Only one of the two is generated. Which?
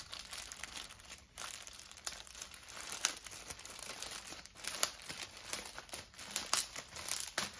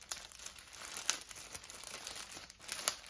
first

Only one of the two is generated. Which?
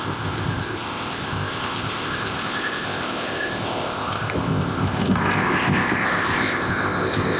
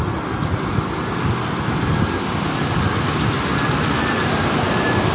first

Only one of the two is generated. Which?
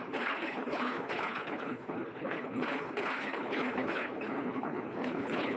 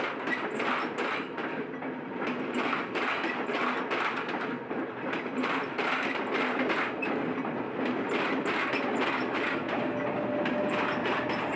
first